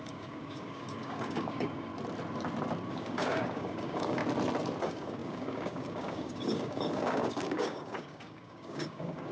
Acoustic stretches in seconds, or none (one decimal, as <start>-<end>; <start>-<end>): 1.9-2.9; 4.2-4.8